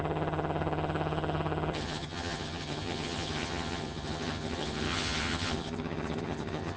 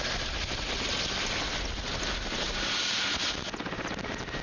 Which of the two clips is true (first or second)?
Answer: second